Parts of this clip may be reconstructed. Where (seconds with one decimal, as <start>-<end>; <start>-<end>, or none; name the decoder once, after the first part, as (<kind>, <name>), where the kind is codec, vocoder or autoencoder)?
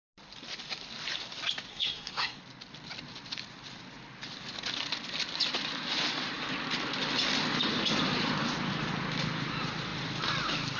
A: 1.7-2.4 (codec, SNAC)